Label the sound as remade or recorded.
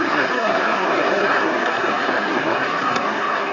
remade